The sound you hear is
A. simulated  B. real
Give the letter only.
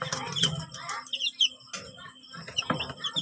B